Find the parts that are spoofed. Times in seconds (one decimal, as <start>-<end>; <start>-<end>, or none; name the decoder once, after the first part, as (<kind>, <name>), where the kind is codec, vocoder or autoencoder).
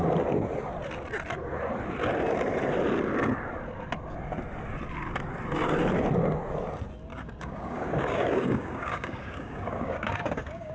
7.1-10.7 (codec, DAC)